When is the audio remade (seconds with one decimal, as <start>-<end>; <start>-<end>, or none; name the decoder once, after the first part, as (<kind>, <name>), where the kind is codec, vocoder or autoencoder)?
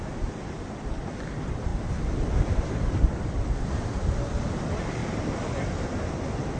none